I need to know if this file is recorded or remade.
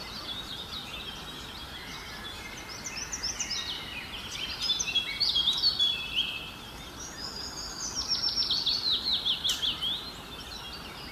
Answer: recorded